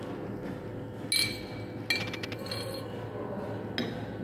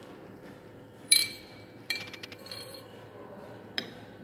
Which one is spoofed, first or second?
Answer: second